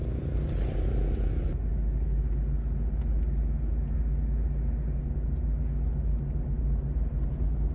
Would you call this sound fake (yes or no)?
no